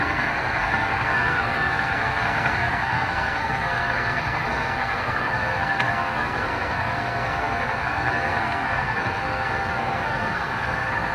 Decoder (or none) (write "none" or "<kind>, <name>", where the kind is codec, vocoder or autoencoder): codec, SNAC